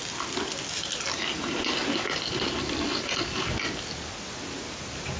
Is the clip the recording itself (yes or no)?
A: yes